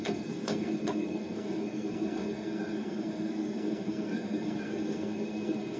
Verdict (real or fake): fake